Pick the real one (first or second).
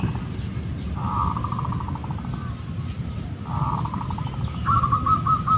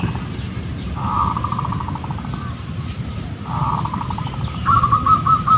first